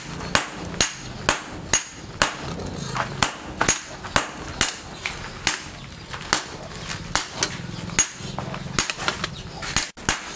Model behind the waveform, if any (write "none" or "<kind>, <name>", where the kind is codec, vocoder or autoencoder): none